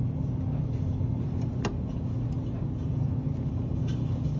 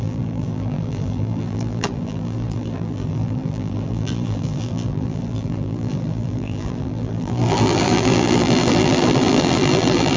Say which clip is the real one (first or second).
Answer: first